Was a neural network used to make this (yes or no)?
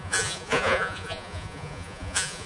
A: yes